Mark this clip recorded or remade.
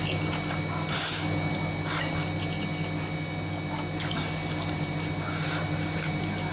recorded